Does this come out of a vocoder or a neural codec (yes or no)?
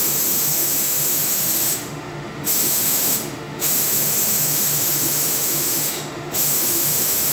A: yes